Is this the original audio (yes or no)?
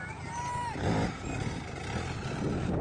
yes